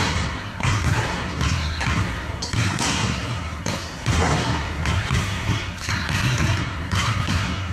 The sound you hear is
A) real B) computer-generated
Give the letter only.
B